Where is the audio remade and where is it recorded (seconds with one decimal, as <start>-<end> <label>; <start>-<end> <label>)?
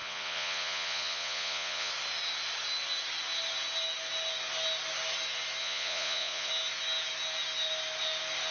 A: 0.0-1.9 remade; 1.9-5.6 recorded; 5.6-6.5 remade; 6.5-8.5 recorded